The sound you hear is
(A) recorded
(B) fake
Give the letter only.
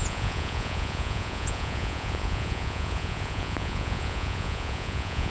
B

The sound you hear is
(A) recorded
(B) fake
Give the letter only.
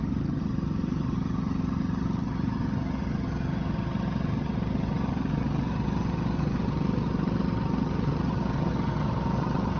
B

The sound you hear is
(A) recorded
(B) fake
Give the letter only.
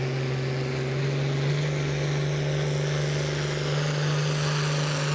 A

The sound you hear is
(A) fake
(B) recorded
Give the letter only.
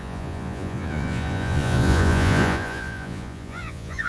A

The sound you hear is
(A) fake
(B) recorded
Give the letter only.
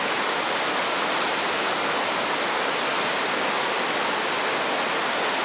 B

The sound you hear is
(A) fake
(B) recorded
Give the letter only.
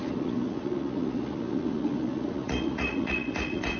A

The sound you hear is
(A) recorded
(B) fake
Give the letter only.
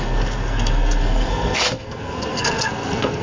B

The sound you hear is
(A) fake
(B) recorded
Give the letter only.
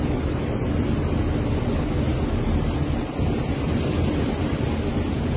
B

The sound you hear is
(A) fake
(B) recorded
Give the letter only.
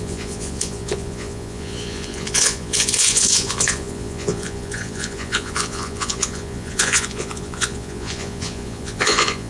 A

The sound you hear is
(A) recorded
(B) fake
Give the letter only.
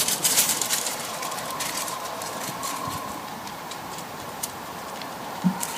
B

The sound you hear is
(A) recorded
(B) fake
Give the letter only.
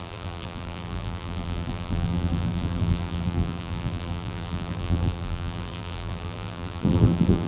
B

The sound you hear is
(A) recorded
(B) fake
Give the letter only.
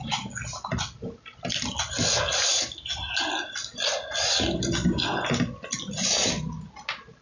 A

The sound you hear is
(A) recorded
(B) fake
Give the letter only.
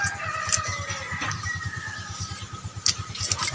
A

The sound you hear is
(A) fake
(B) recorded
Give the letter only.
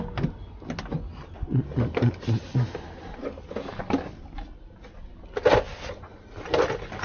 B